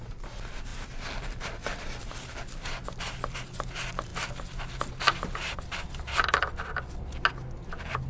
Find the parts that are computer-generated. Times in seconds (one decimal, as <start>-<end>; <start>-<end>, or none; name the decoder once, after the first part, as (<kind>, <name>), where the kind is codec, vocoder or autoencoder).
none